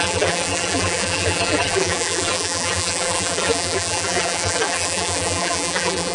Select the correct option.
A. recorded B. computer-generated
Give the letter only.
B